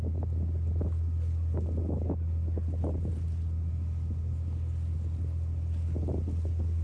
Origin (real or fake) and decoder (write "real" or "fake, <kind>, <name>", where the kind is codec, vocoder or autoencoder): real